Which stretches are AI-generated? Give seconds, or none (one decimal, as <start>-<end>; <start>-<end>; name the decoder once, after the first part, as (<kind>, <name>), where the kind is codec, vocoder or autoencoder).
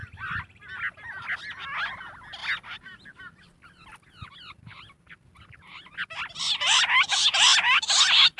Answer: none